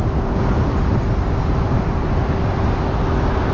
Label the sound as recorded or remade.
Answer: recorded